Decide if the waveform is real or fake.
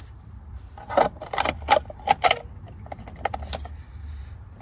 real